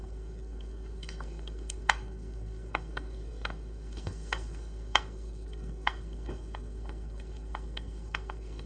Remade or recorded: remade